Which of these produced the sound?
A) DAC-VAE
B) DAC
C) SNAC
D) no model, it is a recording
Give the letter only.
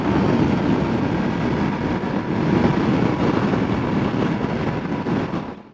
D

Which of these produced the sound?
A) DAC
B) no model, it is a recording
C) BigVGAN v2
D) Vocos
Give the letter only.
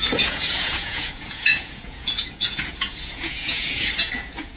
D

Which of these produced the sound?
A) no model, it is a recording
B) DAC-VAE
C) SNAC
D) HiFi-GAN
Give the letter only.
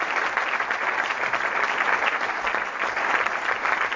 A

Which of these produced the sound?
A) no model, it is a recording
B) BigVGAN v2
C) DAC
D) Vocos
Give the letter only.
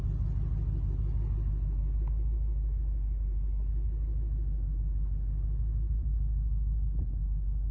A